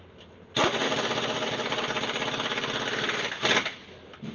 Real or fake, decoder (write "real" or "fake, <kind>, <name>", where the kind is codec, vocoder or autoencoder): real